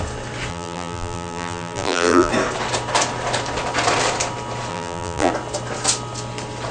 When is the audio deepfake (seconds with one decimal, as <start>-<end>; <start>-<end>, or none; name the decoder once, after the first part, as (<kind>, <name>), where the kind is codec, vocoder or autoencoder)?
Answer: 0.5-2.3 (vocoder, BigVGAN v2); 4.7-5.3